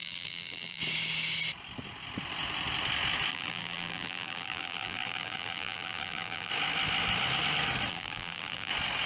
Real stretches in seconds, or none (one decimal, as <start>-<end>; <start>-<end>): 0.8-3.3; 6.5-7.9; 8.7-9.1